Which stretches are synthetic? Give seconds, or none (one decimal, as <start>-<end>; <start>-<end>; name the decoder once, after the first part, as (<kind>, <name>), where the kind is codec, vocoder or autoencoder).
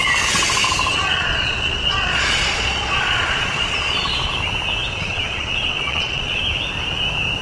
0.9-4.3 (vocoder, Vocos); 4.8-6.4